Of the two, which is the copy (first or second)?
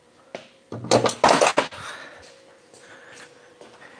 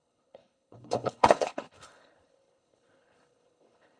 second